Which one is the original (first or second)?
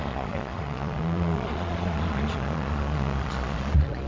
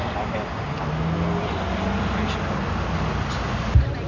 second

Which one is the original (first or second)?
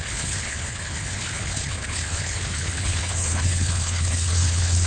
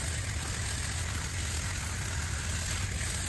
second